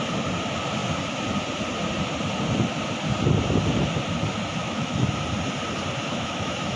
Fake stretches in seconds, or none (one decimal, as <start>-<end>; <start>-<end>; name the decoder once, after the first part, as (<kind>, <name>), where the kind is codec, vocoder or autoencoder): 4.6-5.1 (autoencoder, DAC-VAE); 6.0-6.8